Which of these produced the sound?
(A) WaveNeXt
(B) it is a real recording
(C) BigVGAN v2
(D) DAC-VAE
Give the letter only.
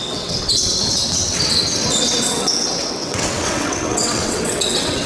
A